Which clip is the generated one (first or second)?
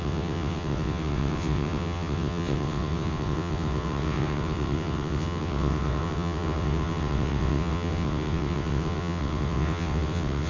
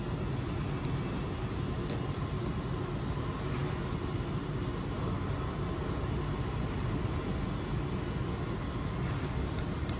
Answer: first